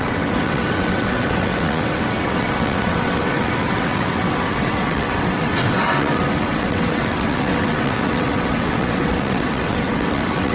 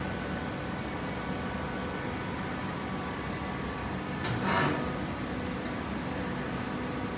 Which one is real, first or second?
second